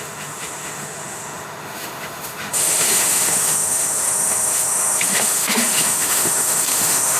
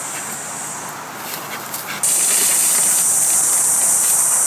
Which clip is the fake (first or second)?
first